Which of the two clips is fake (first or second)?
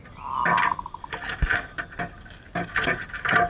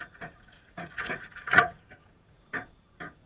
second